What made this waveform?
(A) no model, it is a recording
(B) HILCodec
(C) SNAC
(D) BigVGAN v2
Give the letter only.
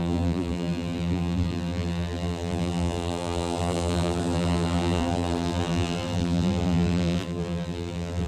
D